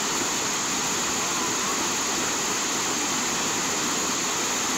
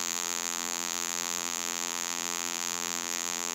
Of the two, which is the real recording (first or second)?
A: first